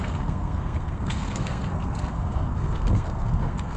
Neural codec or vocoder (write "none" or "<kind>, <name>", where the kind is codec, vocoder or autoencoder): codec, SNAC